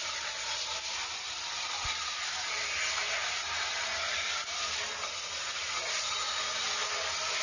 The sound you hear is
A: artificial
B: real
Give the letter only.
B